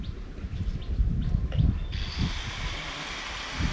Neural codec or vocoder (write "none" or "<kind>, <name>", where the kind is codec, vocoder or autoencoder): none